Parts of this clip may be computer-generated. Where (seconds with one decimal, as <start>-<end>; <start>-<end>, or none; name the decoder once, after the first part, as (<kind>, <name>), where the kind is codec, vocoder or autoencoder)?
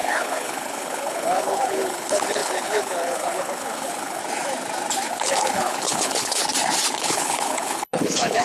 0.0-4.2 (codec, HILCodec); 5.1-6.4; 7.0-8.4